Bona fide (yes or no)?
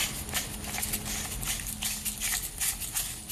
yes